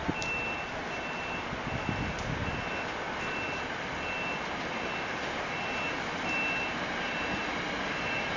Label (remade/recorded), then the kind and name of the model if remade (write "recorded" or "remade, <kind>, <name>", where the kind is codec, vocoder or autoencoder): recorded